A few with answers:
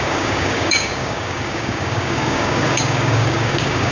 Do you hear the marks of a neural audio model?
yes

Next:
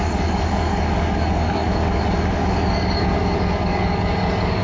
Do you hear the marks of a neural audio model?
yes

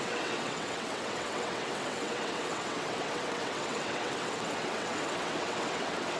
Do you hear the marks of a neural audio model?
yes